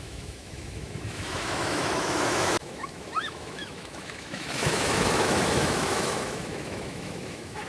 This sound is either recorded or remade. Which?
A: remade